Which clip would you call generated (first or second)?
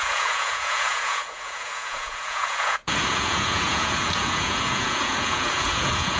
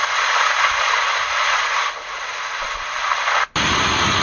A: first